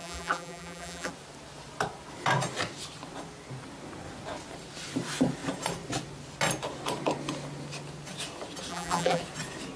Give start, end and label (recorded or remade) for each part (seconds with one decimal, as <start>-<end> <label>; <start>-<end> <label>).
0.0-1.1 remade; 1.1-8.7 recorded; 8.7-9.2 remade; 9.2-9.8 recorded